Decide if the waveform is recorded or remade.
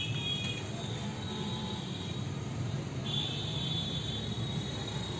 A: recorded